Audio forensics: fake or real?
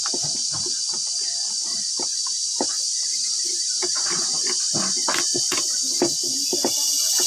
real